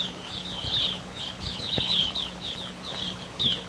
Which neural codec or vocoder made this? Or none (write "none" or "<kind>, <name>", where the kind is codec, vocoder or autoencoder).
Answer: codec, HILCodec